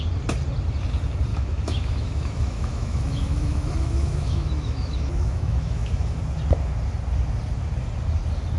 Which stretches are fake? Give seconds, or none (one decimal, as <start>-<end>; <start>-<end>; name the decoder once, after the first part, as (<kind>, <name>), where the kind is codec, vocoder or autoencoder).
1.3-6.2 (autoencoder, DAC-VAE)